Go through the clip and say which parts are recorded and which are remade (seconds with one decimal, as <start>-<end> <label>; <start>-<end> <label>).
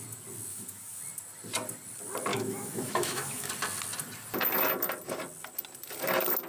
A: 0.0-0.5 recorded; 0.5-1.0 remade; 1.0-2.3 recorded; 2.3-3.5 remade; 3.5-6.5 recorded